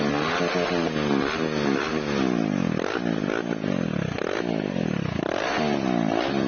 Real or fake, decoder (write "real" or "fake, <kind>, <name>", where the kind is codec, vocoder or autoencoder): real